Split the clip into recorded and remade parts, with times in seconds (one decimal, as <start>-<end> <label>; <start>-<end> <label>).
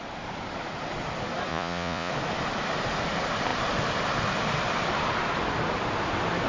0.0-1.5 recorded; 1.5-2.1 remade; 2.1-6.5 recorded